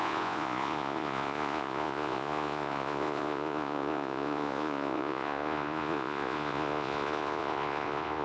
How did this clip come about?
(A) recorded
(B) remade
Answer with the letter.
B